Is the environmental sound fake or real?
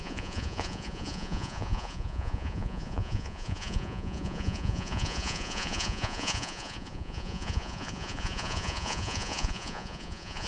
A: fake